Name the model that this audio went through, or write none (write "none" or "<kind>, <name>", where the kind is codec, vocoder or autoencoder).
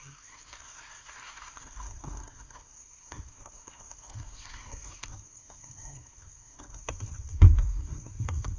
codec, SNAC